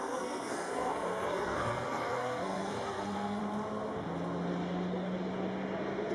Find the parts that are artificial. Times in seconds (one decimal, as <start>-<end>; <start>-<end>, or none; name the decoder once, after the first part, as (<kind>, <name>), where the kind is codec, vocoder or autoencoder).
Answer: 0.0-3.4 (codec, SNAC)